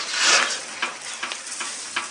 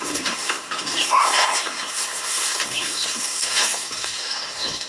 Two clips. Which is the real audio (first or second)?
first